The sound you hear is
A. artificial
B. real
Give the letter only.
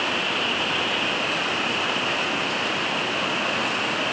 B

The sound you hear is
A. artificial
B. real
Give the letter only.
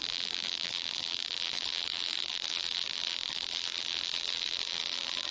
A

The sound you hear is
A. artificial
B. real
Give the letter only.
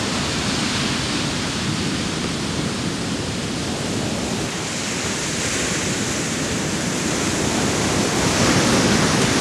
B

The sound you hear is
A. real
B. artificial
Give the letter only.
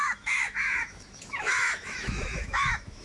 B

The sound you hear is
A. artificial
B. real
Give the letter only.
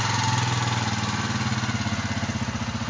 B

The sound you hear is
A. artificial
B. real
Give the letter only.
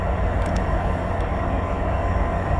A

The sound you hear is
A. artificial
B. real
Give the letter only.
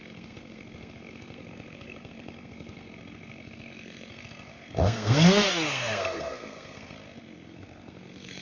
A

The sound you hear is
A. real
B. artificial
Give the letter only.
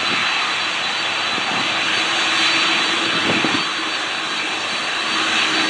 A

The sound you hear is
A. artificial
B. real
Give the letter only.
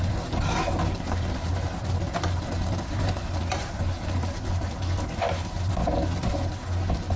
B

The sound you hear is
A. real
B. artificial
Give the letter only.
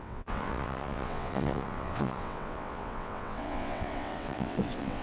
B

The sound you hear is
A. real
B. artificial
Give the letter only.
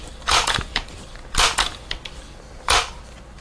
B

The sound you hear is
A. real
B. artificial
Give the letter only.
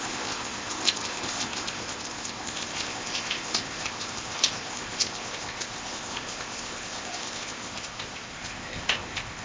B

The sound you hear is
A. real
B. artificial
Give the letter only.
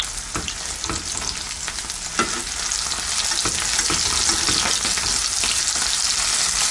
A